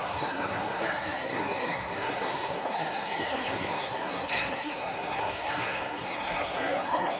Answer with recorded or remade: remade